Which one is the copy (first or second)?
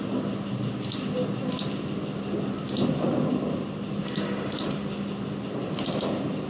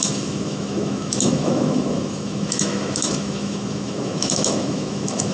second